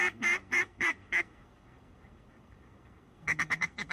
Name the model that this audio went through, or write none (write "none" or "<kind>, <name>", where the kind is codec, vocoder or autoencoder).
codec, SNAC